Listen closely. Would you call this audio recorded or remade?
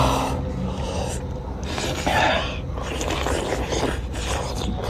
recorded